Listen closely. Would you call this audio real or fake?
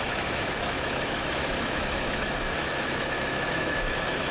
fake